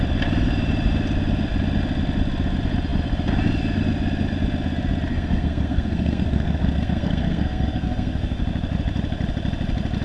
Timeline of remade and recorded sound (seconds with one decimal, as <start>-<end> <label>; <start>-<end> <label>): 0.0-5.1 recorded; 5.1-8.4 remade; 8.4-10.0 recorded